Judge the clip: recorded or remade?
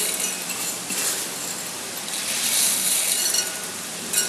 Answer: recorded